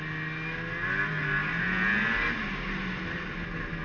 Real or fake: real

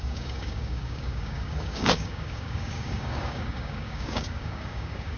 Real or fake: fake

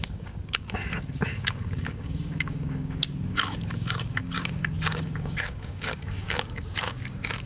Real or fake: fake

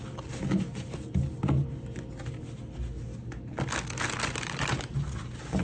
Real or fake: real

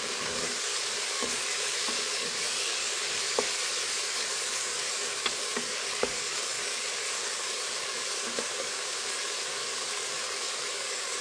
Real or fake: fake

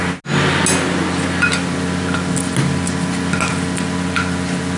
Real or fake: real